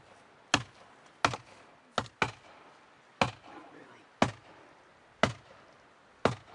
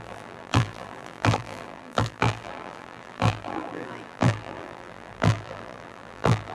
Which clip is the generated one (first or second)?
second